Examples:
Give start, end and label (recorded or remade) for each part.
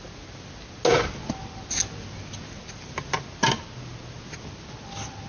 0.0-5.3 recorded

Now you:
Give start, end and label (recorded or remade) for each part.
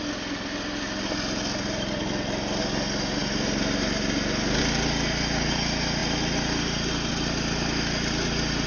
0.0-8.7 recorded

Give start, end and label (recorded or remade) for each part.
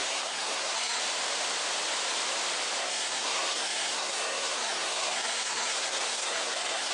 0.0-1.0 remade; 1.0-2.8 recorded; 2.8-6.9 remade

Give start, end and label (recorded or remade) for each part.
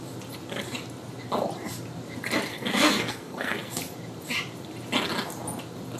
0.0-2.5 recorded; 2.5-3.8 remade; 3.8-6.0 recorded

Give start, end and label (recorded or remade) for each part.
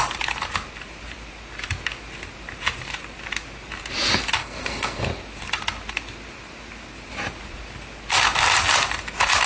0.0-4.4 recorded; 4.4-5.0 remade; 5.0-9.5 recorded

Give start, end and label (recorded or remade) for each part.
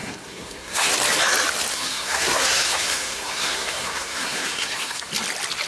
0.0-0.9 remade; 0.9-1.7 recorded; 1.7-5.1 remade; 5.1-5.7 recorded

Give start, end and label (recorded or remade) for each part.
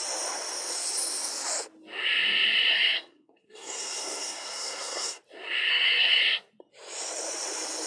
0.0-2.7 recorded; 2.7-5.2 remade; 5.2-5.7 recorded; 5.7-6.2 remade; 6.2-7.9 recorded